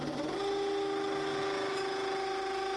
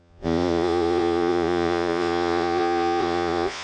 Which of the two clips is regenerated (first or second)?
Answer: second